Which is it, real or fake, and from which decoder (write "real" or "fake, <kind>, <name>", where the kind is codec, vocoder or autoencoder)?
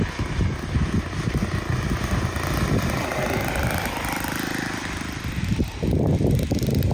real